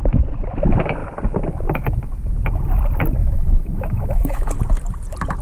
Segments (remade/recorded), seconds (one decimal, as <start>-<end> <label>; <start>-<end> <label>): 0.0-3.2 recorded; 3.2-4.5 remade; 4.5-5.4 recorded